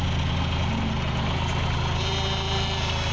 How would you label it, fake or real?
real